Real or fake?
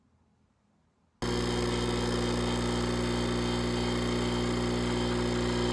real